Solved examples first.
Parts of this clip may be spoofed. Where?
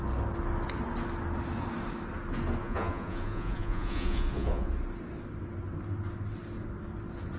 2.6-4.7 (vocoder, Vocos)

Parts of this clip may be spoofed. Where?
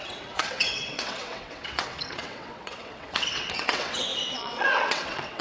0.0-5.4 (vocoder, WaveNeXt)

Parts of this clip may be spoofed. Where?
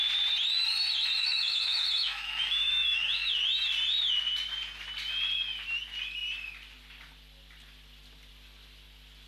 1.2-3.3 (autoencoder, DAC-VAE)